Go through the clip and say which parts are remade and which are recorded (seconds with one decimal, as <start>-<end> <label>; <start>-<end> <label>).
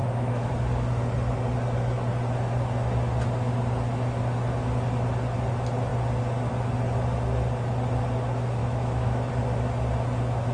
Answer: 0.0-0.5 remade; 0.5-8.6 recorded; 8.6-9.3 remade; 9.3-10.5 recorded